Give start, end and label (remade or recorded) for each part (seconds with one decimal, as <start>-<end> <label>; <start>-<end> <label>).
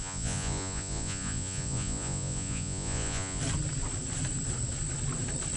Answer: 0.0-3.4 remade; 3.4-5.6 recorded